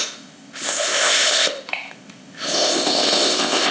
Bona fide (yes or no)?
no